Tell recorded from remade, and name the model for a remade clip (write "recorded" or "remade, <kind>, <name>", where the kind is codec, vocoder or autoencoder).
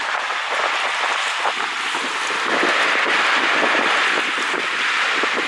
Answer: recorded